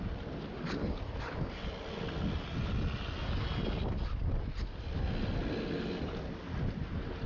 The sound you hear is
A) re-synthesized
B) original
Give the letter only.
B